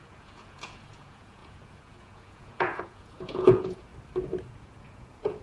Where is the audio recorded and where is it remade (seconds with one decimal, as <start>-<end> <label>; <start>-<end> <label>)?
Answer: 0.0-3.9 remade; 3.9-4.5 recorded; 4.5-5.4 remade